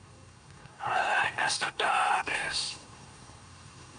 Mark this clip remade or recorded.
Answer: remade